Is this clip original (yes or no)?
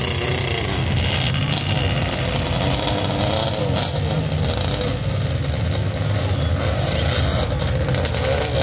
yes